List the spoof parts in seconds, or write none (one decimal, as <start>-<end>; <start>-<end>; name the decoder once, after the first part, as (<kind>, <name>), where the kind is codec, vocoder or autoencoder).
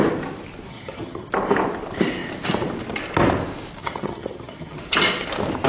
0.7-1.3 (vocoder, HiFi-GAN); 3.8-4.8